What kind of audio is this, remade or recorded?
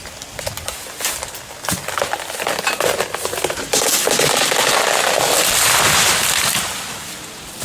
recorded